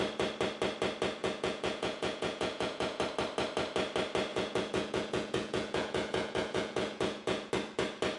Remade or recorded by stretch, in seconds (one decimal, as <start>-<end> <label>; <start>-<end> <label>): 0.0-1.2 recorded; 1.2-3.0 remade; 3.0-4.3 recorded; 4.3-7.5 remade; 7.5-8.2 recorded